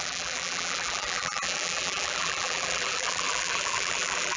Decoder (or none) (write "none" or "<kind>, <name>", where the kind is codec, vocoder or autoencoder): vocoder, BigVGAN v2